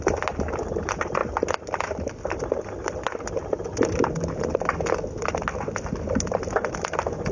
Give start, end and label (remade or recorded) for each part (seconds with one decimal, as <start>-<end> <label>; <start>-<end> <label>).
0.0-7.3 recorded